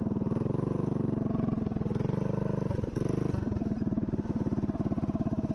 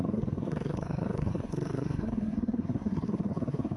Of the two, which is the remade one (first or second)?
second